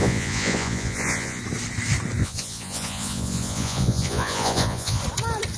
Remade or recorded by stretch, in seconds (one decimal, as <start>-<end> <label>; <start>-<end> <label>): 0.0-1.4 remade; 1.4-2.2 recorded; 2.2-5.0 remade; 5.0-5.6 recorded

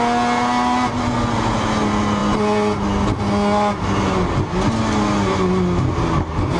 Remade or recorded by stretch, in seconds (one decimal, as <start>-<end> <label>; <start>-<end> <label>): 0.0-6.6 recorded

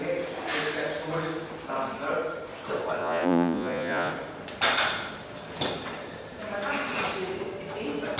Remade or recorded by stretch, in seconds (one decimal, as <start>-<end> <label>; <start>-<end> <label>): 0.0-3.0 recorded; 3.0-4.1 remade; 4.1-8.2 recorded